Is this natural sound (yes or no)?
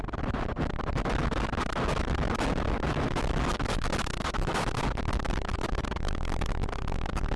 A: yes